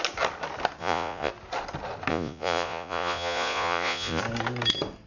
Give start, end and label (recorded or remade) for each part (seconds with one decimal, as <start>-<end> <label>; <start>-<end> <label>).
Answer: 0.0-0.8 recorded; 0.8-1.3 remade; 1.3-2.1 recorded; 2.1-4.2 remade; 4.2-5.1 recorded